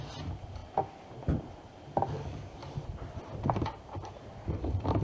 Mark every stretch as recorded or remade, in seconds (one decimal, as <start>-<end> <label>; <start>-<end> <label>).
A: 0.0-2.6 recorded; 2.6-3.2 remade; 3.2-5.0 recorded